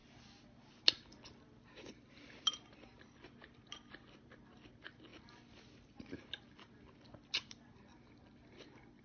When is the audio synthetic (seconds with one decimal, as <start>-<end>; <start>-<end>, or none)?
none